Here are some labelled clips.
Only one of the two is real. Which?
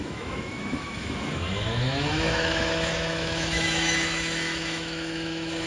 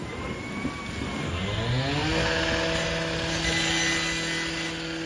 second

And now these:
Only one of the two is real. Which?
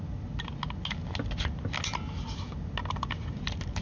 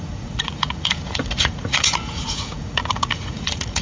first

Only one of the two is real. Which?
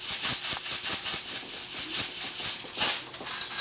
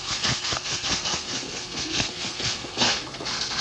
first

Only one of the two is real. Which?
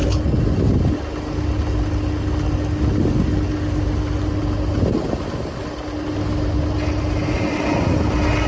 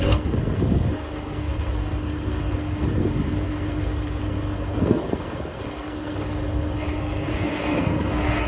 first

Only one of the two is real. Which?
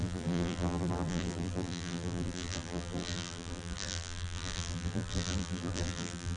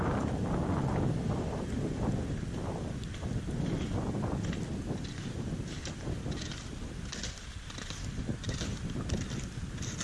second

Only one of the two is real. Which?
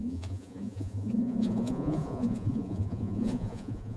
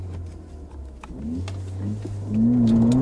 second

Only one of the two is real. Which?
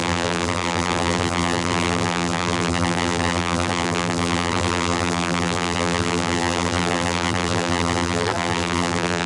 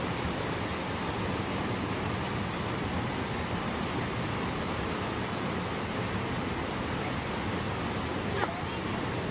second